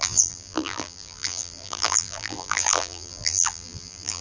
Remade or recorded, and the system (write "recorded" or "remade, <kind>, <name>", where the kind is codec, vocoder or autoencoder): remade, vocoder, BigVGAN v2